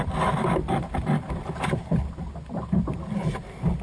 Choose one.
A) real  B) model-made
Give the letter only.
A